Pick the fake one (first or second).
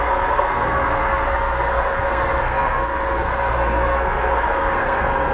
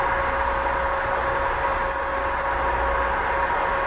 first